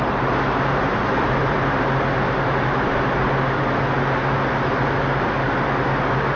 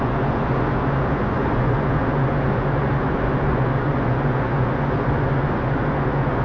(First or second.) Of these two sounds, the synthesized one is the second